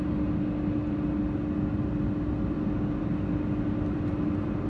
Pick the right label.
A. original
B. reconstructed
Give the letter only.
A